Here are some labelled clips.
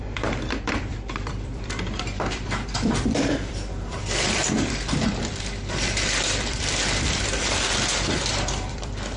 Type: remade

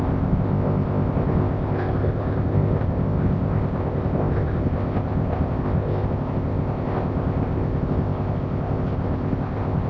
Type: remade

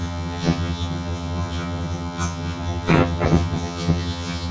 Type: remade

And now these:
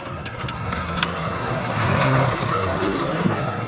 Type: remade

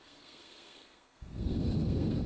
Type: remade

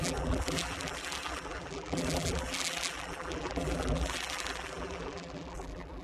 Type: remade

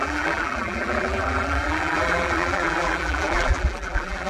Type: remade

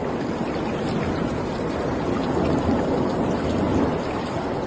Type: recorded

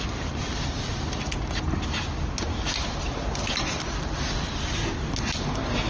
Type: recorded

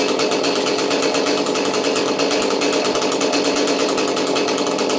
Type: recorded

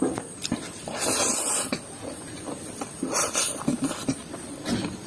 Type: recorded